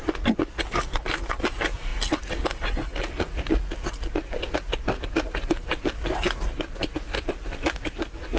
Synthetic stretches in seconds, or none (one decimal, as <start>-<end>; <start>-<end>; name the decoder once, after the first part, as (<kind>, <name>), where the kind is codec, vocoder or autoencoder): none